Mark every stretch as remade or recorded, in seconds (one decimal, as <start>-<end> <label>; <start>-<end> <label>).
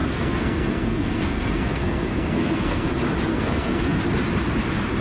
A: 0.0-2.9 remade; 2.9-3.3 recorded; 3.3-4.0 remade; 4.0-5.0 recorded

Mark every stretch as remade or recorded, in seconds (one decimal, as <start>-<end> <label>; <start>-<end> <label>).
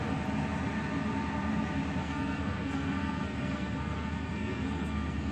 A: 0.0-2.0 recorded; 2.0-5.3 remade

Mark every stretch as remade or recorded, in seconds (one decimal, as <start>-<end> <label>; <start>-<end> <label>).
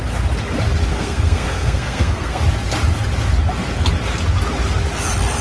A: 0.0-0.9 recorded; 0.9-2.4 remade; 2.4-5.4 recorded